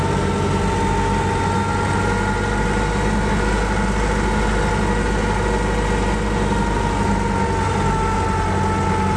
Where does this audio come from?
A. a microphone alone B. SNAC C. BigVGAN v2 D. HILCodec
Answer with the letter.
A